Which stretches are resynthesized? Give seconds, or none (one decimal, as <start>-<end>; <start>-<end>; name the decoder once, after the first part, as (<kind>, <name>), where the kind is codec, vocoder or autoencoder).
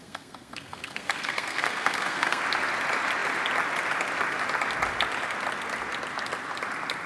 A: 0.0-2.4 (codec, SNAC)